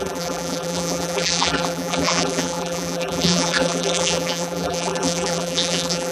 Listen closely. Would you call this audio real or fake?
fake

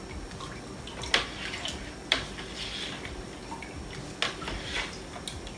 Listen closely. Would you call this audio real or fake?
real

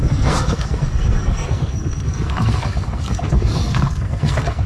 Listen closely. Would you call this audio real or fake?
fake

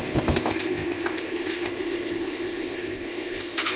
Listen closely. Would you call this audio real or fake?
fake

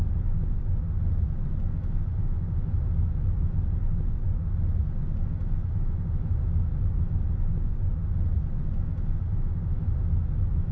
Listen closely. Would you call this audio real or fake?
real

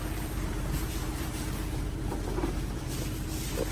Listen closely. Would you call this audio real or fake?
fake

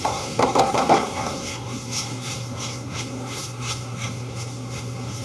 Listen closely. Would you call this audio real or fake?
fake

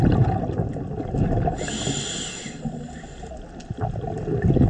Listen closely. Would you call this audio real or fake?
real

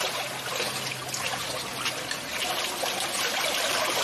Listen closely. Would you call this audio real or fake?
real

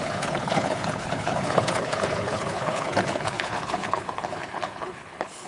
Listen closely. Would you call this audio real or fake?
fake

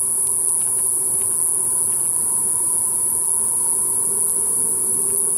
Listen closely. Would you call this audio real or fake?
real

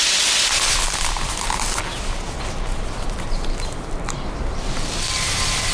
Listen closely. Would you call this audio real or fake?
real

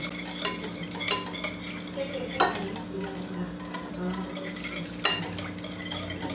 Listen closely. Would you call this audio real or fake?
real